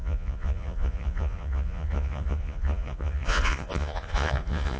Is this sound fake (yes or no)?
yes